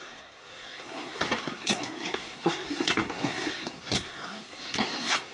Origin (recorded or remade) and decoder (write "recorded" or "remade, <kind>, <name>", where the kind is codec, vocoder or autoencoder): remade, codec, SNAC